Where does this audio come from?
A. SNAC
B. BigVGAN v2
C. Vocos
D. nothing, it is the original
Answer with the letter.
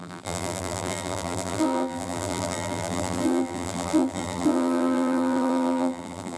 B